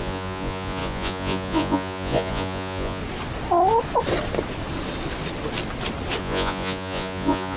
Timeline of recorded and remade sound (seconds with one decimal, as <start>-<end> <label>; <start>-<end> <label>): 0.0-3.0 remade; 3.0-6.2 recorded; 6.2-7.6 remade